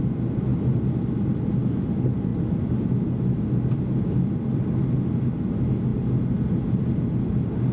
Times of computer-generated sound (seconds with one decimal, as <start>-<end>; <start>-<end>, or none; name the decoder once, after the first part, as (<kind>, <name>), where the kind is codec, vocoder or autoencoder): none